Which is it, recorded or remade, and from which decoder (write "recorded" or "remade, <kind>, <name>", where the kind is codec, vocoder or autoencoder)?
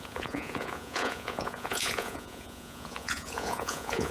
remade, vocoder, Vocos